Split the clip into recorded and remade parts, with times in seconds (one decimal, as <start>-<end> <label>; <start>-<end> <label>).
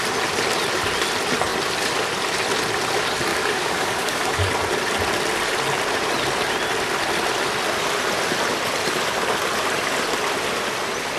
0.0-3.3 recorded; 3.3-4.5 remade; 4.5-11.2 recorded